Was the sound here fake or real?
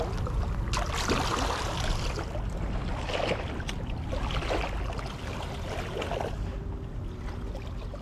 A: real